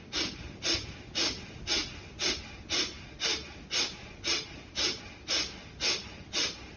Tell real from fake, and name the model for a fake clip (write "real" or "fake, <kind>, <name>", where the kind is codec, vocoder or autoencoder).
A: real